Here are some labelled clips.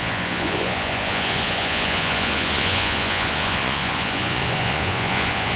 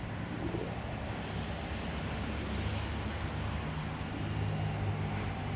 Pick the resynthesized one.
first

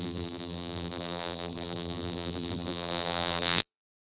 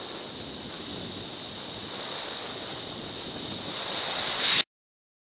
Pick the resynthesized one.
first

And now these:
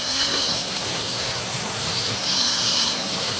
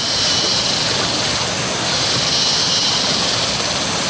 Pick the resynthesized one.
first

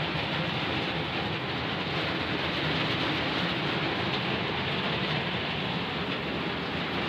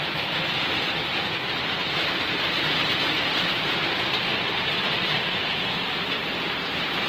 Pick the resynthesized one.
second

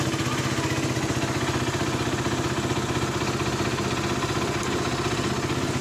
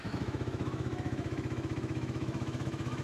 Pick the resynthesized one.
second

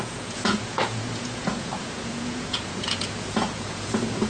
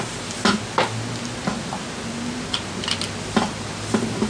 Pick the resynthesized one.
first